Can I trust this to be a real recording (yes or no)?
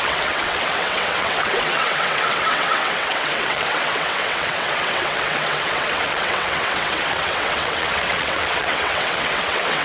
no